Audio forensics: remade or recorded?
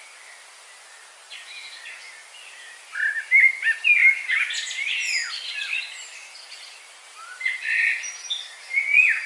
recorded